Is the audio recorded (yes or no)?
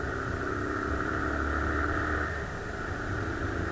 yes